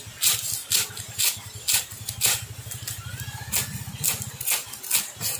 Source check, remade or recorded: recorded